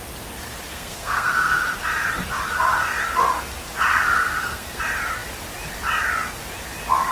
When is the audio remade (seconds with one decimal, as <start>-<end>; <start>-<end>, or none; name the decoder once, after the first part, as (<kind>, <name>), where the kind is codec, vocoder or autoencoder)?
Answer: 0.7-1.6 (codec, SNAC); 3.9-4.8